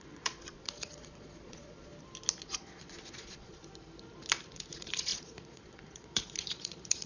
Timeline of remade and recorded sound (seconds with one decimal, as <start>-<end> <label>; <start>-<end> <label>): 0.0-1.9 remade; 1.9-2.5 recorded; 2.5-3.6 remade; 3.6-4.5 recorded; 4.5-7.1 remade